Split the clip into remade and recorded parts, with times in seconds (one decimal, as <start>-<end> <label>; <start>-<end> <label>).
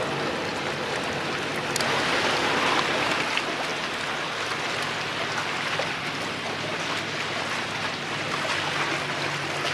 0.0-9.7 recorded